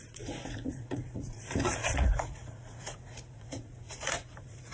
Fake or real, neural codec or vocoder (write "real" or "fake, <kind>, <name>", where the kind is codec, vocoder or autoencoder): fake, vocoder, Vocos